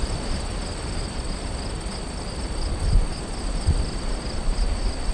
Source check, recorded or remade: recorded